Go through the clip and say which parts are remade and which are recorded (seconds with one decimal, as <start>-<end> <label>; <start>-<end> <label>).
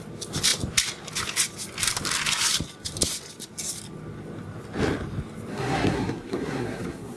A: 0.0-5.5 recorded; 5.5-7.2 remade